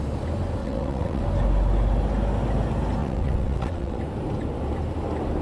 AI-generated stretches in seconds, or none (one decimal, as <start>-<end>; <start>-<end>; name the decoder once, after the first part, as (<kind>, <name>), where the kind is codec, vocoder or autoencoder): 0.6-1.2 (vocoder, WaveNeXt); 3.0-4.0